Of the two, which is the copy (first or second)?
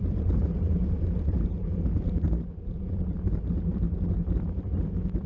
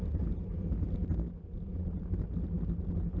first